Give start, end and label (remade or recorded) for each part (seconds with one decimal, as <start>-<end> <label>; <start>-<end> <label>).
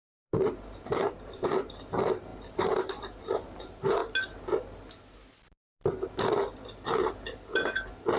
0.0-4.0 remade; 4.0-8.2 recorded